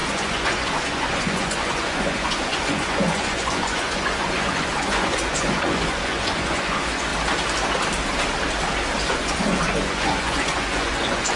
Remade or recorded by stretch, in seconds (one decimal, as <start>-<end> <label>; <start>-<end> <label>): 0.0-7.1 remade; 7.1-9.0 recorded; 9.0-11.4 remade